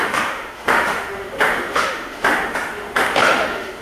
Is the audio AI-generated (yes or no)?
yes